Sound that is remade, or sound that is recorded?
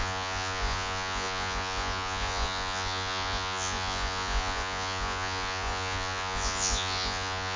remade